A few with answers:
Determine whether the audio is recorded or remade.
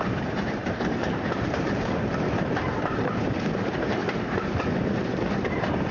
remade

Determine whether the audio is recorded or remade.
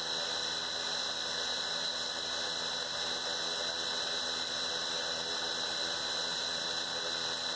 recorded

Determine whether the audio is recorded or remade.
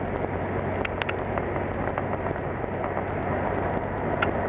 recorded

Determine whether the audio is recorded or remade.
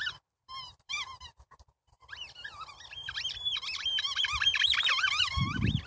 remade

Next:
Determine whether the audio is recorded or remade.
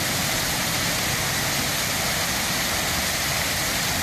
recorded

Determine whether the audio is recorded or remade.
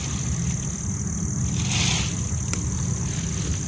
recorded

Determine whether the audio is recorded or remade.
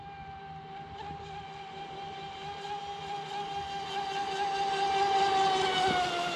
recorded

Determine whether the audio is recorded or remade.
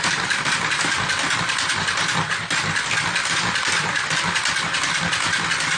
remade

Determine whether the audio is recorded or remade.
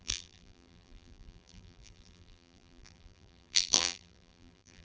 remade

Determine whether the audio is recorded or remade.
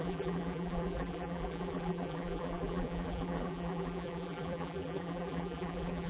remade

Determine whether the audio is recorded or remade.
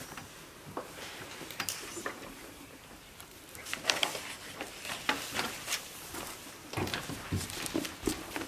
remade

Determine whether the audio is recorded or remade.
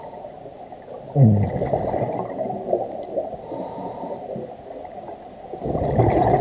recorded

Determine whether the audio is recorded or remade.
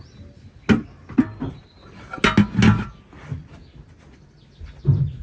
recorded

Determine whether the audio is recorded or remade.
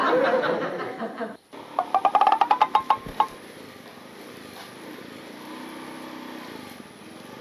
recorded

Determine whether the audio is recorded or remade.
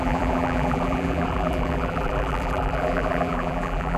remade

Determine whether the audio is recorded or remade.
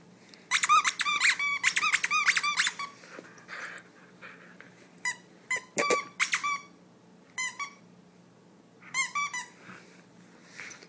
remade